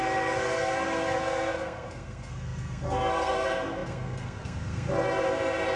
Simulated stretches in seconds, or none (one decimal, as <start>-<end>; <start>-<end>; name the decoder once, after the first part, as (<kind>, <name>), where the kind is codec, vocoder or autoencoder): 0.0-4.9 (codec, SNAC)